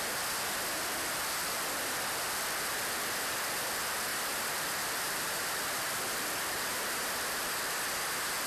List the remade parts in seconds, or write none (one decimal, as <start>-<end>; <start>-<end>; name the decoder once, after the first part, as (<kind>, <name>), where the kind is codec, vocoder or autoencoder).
4.1-7.1 (vocoder, BigVGAN v2)